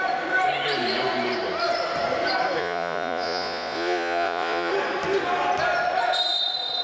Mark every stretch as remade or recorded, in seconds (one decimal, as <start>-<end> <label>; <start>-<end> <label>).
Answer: 0.0-2.6 recorded; 2.6-4.7 remade; 4.7-6.8 recorded